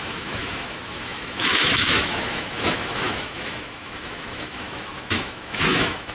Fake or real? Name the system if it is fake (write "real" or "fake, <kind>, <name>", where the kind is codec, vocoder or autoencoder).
fake, autoencoder, DAC-VAE